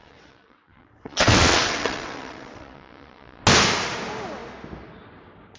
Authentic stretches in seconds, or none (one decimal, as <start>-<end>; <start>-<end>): 3.4-5.6